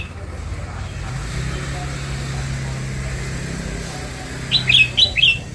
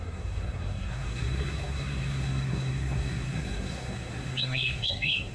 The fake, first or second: second